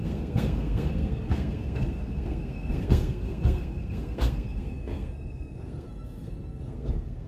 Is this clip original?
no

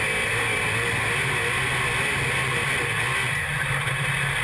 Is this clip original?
yes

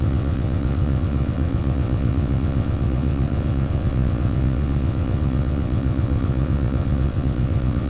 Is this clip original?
no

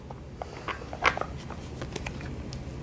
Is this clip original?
yes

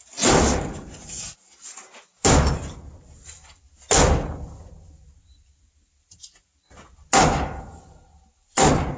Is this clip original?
yes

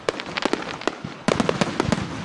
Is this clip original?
yes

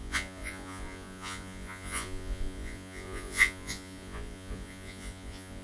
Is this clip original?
no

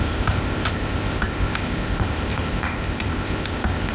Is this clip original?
no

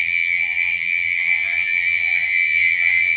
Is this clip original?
no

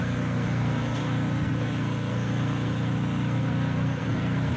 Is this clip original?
no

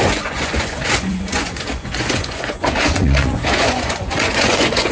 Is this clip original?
no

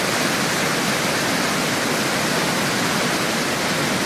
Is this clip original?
yes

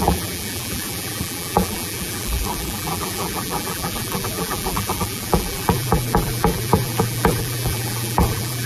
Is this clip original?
no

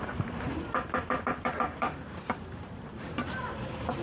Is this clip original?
no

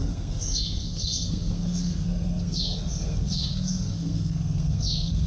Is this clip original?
no